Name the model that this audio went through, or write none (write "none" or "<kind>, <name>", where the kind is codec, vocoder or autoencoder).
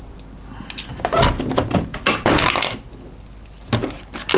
none